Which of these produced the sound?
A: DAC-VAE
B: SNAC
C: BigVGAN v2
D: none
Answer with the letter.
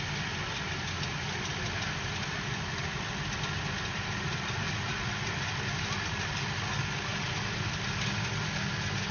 D